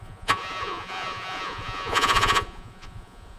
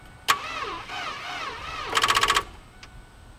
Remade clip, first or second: first